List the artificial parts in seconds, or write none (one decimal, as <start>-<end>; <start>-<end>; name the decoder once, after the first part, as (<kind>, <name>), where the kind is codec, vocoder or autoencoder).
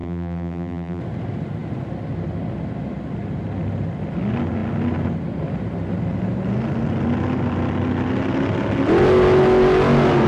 0.0-1.0 (vocoder, BigVGAN v2)